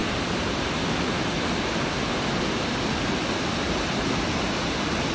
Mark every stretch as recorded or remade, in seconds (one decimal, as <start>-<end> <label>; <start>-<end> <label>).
0.0-5.1 recorded